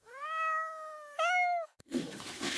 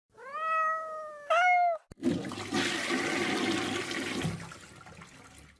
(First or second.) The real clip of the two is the second